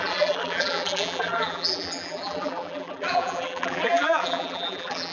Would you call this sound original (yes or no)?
no